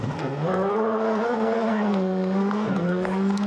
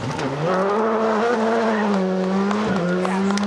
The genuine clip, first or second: second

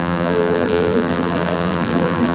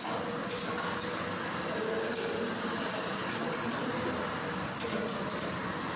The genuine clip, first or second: second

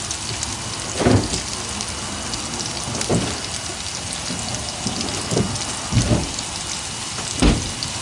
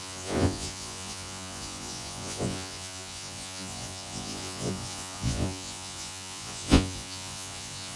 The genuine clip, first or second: first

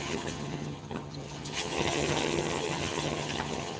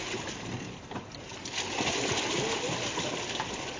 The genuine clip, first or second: second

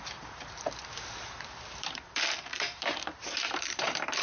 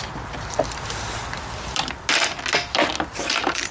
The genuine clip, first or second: second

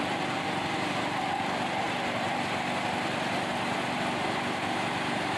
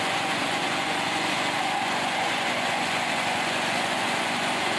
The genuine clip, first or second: first